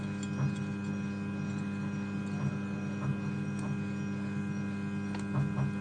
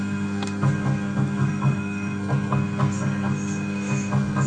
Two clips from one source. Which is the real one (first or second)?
first